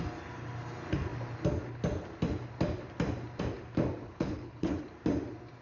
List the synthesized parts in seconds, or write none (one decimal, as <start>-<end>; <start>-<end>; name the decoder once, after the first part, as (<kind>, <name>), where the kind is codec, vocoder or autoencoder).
4.0-4.8 (codec, HILCodec)

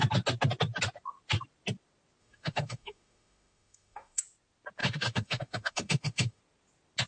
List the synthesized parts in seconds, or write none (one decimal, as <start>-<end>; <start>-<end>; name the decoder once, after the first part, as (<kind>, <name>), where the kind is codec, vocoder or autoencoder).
2.2-4.2 (autoencoder, DAC-VAE); 4.8-6.4

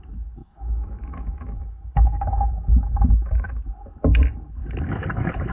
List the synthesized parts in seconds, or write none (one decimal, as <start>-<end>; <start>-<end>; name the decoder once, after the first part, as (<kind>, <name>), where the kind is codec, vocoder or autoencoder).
0.4-3.7 (autoencoder, DAC-VAE)

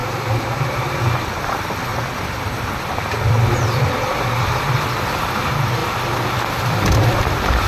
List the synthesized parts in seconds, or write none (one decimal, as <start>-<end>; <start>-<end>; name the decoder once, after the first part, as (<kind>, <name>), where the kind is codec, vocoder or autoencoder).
0.0-1.4 (vocoder, BigVGAN v2); 1.9-2.7